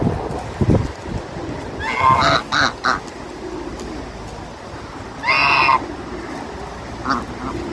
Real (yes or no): yes